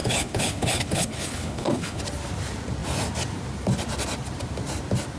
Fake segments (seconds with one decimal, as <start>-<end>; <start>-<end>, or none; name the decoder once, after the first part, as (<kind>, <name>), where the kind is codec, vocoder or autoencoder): 0.0-2.0 (codec, HILCodec)